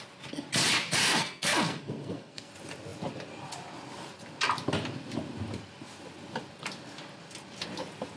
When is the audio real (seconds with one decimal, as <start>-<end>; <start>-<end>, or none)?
0.0-1.0; 2.5-8.2